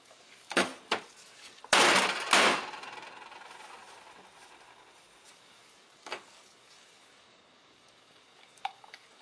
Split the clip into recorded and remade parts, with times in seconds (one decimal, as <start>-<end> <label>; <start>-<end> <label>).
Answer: 0.0-0.7 remade; 0.7-1.2 recorded; 1.2-1.6 remade; 1.6-5.3 recorded; 5.3-9.2 remade